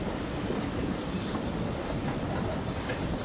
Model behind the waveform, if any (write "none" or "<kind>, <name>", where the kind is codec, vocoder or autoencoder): none